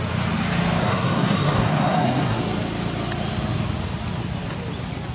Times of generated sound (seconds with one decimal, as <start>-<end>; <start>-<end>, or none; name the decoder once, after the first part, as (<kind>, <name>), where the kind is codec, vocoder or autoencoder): 0.8-2.4 (codec, SNAC)